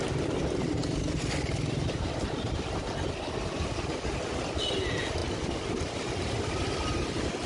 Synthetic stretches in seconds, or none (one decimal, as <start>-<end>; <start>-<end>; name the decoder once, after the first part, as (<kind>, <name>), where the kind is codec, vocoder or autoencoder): none